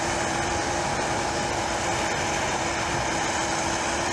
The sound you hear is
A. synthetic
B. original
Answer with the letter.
B